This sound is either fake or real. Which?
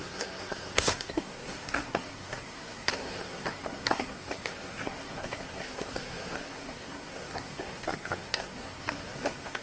fake